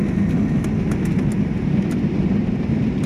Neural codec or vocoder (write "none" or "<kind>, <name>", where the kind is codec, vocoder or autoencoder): none